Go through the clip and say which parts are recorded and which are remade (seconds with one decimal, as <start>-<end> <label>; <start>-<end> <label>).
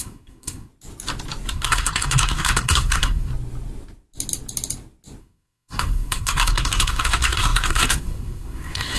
0.0-0.7 remade; 0.7-1.5 recorded; 1.5-3.3 remade; 3.3-5.2 recorded; 5.2-9.0 remade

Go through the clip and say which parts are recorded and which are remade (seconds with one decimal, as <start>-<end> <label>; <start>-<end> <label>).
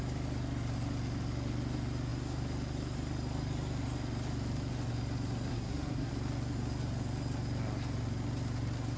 0.0-5.5 recorded; 5.5-6.1 remade; 6.1-9.0 recorded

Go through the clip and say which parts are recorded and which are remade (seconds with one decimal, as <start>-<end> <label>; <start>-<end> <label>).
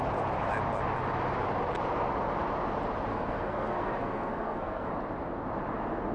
0.0-3.1 recorded; 3.1-4.9 remade; 4.9-6.1 recorded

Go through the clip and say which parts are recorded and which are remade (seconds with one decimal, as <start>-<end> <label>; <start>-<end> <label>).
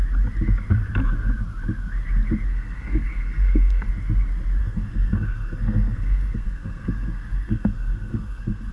0.0-2.5 recorded; 2.5-3.9 remade; 3.9-4.6 recorded; 4.6-8.7 remade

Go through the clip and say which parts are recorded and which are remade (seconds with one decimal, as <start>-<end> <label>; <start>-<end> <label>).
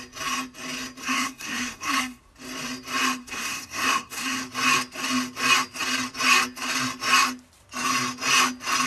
0.0-1.0 recorded; 1.0-2.2 remade; 2.2-3.2 recorded; 3.2-4.4 remade; 4.4-8.9 recorded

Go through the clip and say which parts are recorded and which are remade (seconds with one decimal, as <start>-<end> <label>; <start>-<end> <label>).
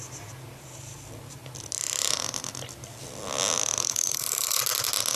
0.0-3.8 recorded; 3.8-4.6 remade; 4.6-5.2 recorded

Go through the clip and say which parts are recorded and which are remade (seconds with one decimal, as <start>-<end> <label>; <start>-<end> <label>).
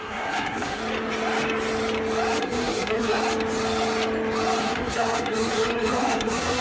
0.0-0.8 remade; 0.8-2.4 recorded; 2.4-3.2 remade; 3.2-4.6 recorded; 4.6-6.6 remade